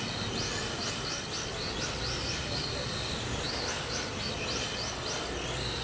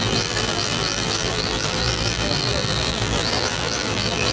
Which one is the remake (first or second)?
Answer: second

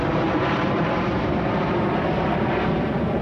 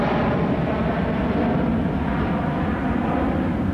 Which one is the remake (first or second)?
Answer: first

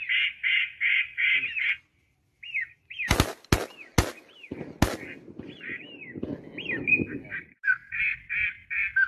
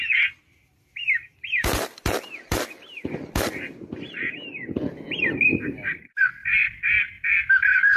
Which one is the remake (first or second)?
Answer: second